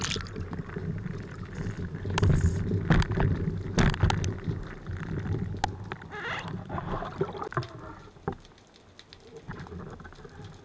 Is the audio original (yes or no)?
yes